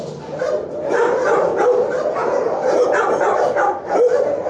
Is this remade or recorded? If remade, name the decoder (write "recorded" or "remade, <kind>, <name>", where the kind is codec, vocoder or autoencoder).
recorded